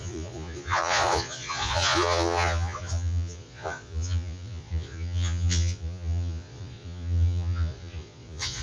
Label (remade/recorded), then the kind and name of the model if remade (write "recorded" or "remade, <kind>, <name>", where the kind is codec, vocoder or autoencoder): remade, vocoder, Vocos